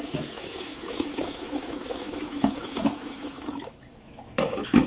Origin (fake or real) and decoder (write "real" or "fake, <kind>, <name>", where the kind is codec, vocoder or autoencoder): fake, autoencoder, DAC-VAE